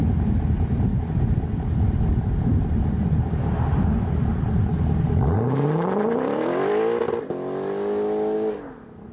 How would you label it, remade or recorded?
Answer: recorded